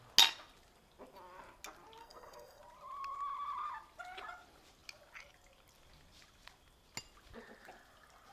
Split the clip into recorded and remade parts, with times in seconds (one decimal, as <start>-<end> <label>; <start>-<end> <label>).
0.0-2.0 recorded; 2.0-2.6 remade; 2.6-8.3 recorded